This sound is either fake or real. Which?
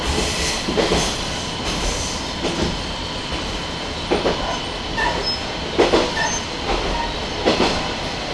real